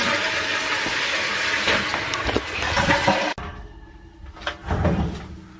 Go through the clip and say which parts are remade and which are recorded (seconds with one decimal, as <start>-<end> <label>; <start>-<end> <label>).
0.0-5.6 recorded

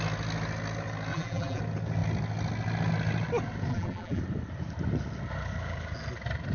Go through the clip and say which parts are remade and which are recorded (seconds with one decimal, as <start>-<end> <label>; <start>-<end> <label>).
0.0-1.1 recorded; 1.1-1.6 remade; 1.6-3.7 recorded; 3.7-4.2 remade; 4.2-6.5 recorded

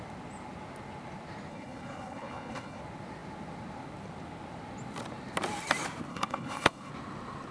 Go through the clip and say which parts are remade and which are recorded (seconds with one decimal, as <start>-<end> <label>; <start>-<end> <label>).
0.0-1.5 recorded; 1.5-2.8 remade; 2.8-6.1 recorded; 6.1-6.9 remade; 6.9-7.5 recorded

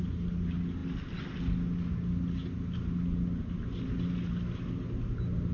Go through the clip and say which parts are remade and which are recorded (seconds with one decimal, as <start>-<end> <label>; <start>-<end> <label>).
0.0-5.5 recorded

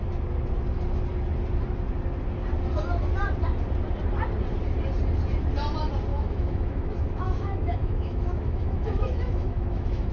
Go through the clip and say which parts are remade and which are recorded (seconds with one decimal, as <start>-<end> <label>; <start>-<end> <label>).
0.0-6.1 recorded; 6.1-10.1 remade

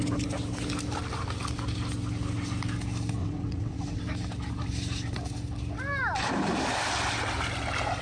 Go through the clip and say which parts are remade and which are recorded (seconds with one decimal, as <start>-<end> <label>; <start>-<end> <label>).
0.0-3.2 recorded; 3.2-4.0 remade; 4.0-8.0 recorded

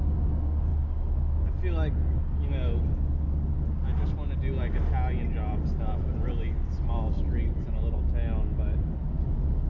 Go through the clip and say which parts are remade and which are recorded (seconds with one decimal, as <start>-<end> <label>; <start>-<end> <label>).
0.0-9.7 recorded

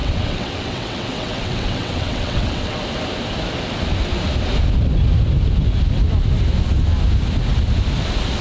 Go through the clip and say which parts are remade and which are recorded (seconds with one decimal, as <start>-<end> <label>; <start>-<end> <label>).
0.0-2.8 remade; 2.8-8.4 recorded